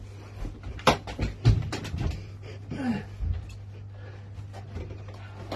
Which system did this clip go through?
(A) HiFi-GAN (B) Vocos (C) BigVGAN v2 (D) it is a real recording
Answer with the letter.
D